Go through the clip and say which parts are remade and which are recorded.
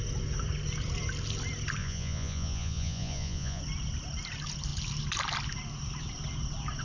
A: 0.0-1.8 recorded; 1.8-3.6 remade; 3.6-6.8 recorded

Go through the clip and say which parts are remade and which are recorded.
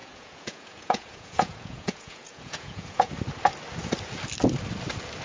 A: 0.0-3.1 remade; 3.1-5.2 recorded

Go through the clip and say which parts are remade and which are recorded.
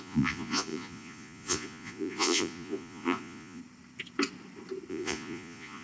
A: 0.0-3.6 remade; 3.6-4.9 recorded; 4.9-5.8 remade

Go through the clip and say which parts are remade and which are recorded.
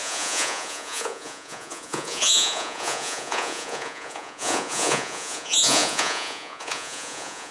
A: 0.0-7.5 remade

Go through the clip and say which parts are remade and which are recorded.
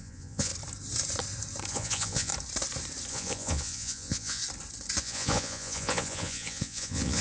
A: 0.0-0.5 remade; 0.5-1.7 recorded; 1.7-2.3 remade; 2.3-3.1 recorded; 3.1-4.4 remade; 4.4-5.0 recorded; 5.0-7.2 remade